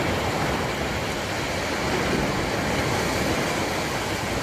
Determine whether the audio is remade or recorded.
recorded